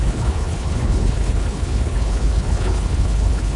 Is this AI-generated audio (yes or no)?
yes